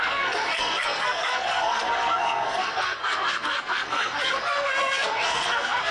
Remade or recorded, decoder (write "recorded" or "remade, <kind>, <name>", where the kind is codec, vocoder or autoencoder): remade, codec, SNAC